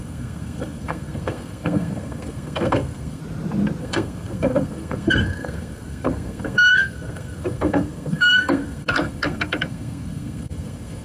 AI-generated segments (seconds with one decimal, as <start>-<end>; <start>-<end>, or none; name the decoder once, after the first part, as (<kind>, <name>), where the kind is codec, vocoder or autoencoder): 0.0-3.2 (codec, SNAC); 3.8-11.0